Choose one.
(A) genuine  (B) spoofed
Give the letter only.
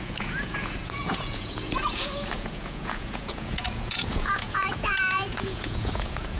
B